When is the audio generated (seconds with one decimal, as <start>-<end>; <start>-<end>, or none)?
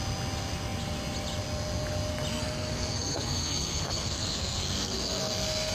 2.3-5.7